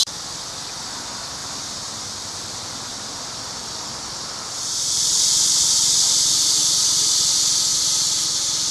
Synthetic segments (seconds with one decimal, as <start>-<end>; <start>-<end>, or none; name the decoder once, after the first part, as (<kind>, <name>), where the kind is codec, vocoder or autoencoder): 1.4-5.3 (vocoder, BigVGAN v2); 6.6-7.3; 7.7-8.7